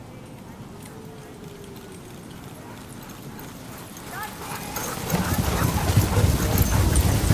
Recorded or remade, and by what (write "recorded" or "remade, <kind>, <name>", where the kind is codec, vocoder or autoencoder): recorded